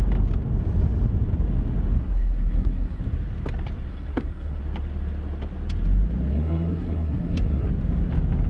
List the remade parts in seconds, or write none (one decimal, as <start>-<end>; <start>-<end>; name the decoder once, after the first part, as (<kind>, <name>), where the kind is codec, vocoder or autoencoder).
2.0-3.0 (codec, SNAC); 3.9-4.6; 6.3-7.7